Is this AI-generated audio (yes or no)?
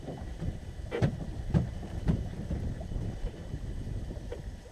yes